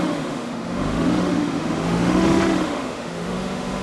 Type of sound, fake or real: fake